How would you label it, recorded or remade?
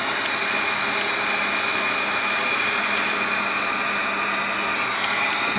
recorded